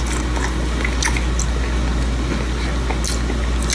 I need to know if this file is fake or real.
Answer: real